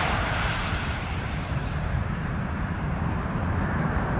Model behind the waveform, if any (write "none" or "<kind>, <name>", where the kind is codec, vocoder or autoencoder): vocoder, BigVGAN v2